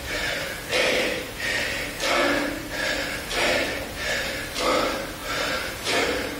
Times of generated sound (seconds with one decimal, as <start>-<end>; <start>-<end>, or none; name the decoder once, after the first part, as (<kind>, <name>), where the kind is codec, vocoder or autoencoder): 2.6-4.6 (vocoder, BigVGAN v2); 5.2-6.0